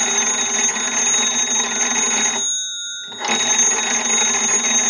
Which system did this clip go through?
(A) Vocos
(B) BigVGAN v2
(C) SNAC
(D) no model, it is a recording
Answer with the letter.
D